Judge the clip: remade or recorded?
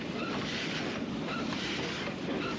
remade